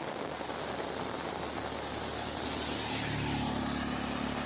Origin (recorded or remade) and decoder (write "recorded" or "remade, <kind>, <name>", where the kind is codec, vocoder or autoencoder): recorded